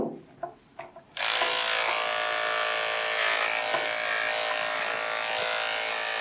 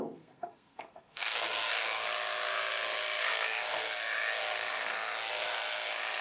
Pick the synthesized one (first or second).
second